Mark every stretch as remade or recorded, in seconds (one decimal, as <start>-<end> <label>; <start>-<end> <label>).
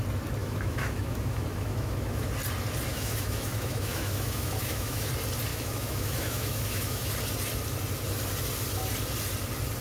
0.0-0.4 recorded; 0.4-2.3 remade; 2.3-2.9 recorded; 2.9-5.1 remade; 5.1-5.5 recorded; 5.5-7.1 remade; 7.1-9.8 recorded